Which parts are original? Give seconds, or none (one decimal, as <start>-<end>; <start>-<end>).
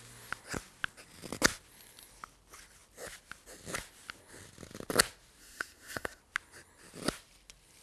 0.0-5.4; 6.2-7.8